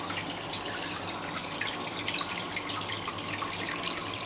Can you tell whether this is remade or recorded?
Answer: recorded